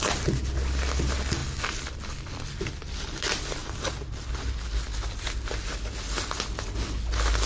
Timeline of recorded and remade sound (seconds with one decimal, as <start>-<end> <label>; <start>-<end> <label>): 0.0-7.5 recorded